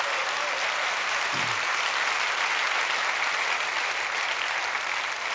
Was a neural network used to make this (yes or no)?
no